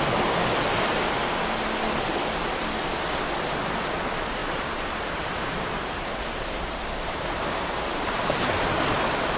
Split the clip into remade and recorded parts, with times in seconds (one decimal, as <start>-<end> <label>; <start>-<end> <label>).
0.0-4.4 recorded; 4.4-8.7 remade; 8.7-9.4 recorded